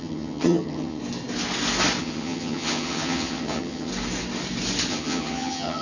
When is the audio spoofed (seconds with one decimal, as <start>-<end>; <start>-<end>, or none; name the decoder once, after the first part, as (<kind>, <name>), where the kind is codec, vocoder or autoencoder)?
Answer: 0.0-1.0 (vocoder, HiFi-GAN); 2.0-3.9; 4.9-5.8

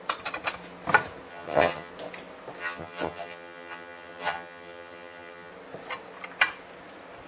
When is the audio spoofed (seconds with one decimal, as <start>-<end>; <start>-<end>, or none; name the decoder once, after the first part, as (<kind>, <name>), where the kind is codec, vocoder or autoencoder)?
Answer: 1.3-1.9 (vocoder, HiFi-GAN); 2.6-5.5